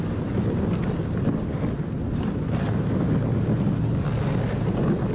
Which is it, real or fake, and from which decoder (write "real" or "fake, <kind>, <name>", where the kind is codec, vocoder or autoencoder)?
real